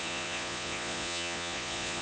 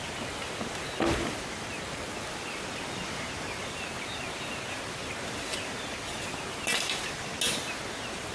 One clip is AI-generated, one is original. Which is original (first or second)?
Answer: second